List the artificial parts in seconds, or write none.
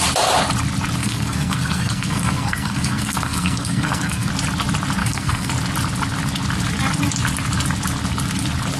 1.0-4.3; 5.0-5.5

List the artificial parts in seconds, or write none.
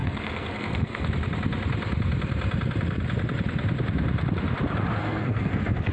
0.0-1.1; 5.0-5.9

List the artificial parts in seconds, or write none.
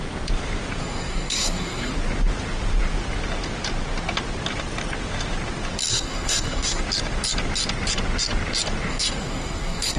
0.8-1.9; 5.9-6.8; 8.9-10.0